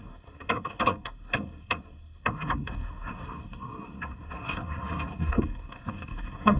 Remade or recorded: remade